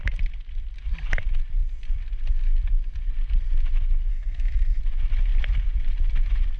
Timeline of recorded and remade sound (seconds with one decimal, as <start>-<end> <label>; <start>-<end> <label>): 0.0-4.1 recorded; 4.1-4.8 remade; 4.8-6.6 recorded